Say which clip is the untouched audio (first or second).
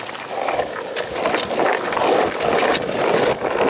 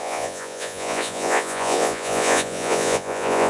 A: first